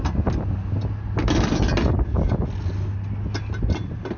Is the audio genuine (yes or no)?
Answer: yes